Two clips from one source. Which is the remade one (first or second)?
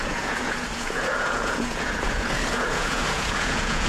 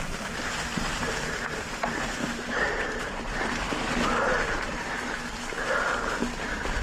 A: first